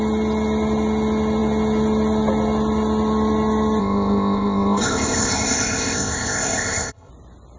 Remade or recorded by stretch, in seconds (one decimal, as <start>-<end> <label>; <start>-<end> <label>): 0.0-3.8 recorded; 3.8-7.1 remade; 7.1-7.6 recorded

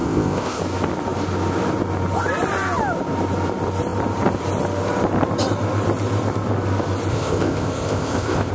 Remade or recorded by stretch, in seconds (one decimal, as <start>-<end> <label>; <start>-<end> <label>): 0.0-0.6 remade; 0.6-7.1 recorded; 7.1-8.5 remade

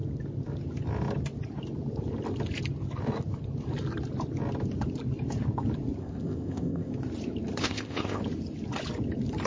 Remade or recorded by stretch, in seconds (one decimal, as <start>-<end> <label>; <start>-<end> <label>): 0.0-6.0 recorded; 6.0-6.9 remade; 6.9-7.6 recorded; 7.6-8.2 remade; 8.2-9.5 recorded

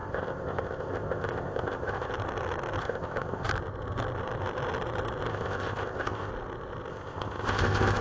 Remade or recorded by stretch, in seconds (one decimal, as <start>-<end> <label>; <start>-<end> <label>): 0.0-2.1 remade; 2.1-2.8 recorded; 2.8-3.5 remade; 3.5-5.3 recorded; 5.3-6.3 remade; 6.3-6.9 recorded; 6.9-8.0 remade

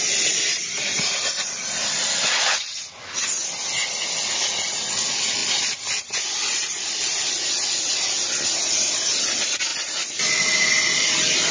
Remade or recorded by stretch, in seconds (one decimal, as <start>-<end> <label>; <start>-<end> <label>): 0.0-11.5 recorded